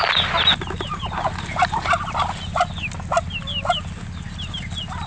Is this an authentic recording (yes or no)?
yes